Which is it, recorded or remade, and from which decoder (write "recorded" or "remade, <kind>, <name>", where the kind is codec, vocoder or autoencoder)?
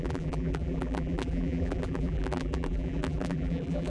remade, vocoder, BigVGAN v2